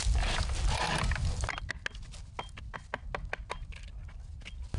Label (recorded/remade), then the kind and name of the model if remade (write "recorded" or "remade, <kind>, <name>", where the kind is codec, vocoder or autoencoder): recorded